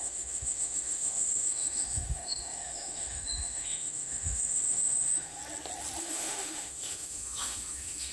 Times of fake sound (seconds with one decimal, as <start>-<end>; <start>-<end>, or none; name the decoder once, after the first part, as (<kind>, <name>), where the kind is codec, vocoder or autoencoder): 0.0-5.4 (autoencoder, DAC-VAE); 6.0-8.1